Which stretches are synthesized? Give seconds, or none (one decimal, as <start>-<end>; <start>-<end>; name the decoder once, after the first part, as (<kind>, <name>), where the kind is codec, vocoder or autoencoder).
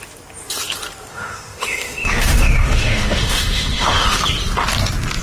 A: 1.1-4.2 (autoencoder, DAC-VAE)